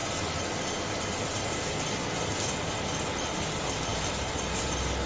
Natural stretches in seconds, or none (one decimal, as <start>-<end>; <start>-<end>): 0.0-5.1